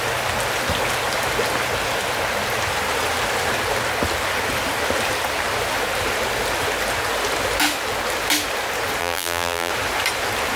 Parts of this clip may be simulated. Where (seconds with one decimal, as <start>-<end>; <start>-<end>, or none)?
9.0-9.7